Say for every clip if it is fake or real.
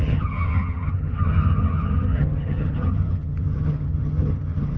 fake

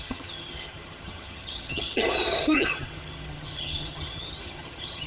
fake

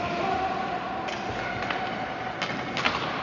real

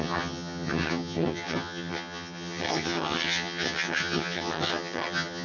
fake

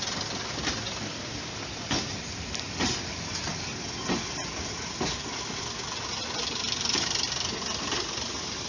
real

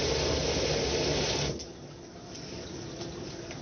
real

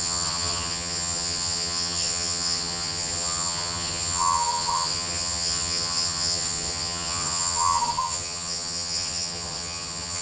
fake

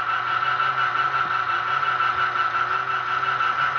real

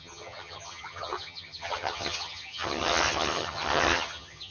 fake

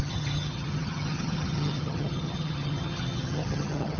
fake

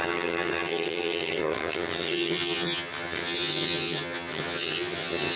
fake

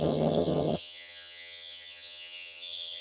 fake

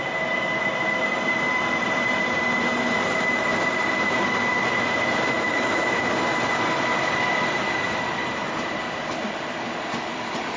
real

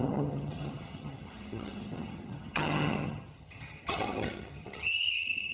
fake